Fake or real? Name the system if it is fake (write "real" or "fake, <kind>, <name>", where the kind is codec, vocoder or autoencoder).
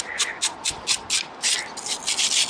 real